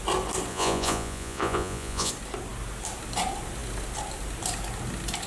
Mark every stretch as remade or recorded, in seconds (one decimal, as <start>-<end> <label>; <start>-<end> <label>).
0.0-0.5 recorded; 0.5-2.1 remade; 2.1-5.3 recorded